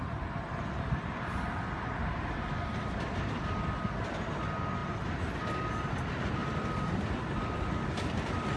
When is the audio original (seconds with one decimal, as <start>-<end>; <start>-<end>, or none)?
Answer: 0.0-6.4; 8.2-8.6